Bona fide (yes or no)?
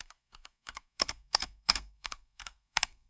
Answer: no